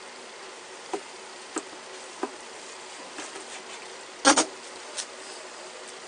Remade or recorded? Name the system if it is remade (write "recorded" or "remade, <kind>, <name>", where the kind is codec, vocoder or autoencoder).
recorded